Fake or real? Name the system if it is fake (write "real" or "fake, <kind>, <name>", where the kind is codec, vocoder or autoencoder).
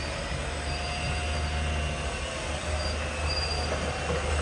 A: real